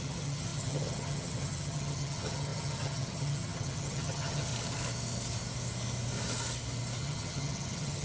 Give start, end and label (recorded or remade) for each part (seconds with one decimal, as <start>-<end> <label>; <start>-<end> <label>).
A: 0.0-4.5 remade; 4.5-7.0 recorded; 7.0-8.0 remade